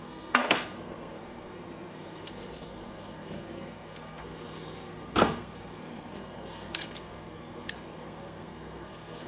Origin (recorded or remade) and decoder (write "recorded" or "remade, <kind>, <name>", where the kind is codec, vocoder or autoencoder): remade, codec, SNAC